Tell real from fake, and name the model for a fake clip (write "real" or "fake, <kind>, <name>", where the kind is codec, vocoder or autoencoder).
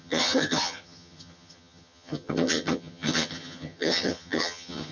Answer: fake, vocoder, HiFi-GAN